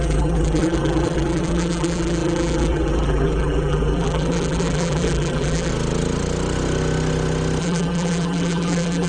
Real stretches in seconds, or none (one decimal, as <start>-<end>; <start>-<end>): 5.7-7.6